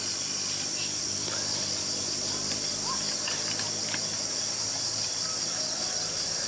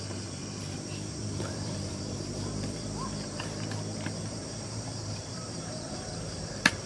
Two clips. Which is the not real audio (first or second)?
second